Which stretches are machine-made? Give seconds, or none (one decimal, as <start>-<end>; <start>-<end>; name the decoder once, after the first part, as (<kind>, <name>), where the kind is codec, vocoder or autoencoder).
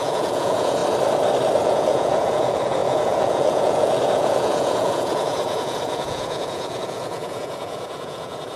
0.0-0.8 (vocoder, Vocos); 1.6-8.6